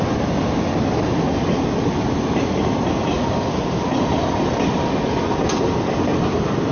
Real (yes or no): yes